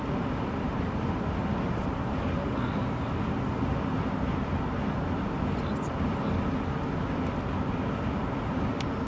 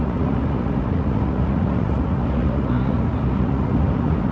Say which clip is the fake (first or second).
second